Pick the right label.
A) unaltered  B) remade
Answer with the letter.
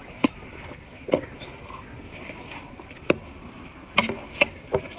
A